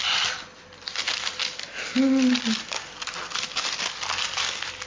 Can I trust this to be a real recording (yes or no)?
yes